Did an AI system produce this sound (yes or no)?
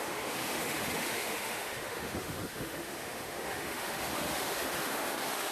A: yes